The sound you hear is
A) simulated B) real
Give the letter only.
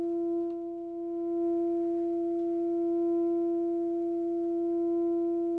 B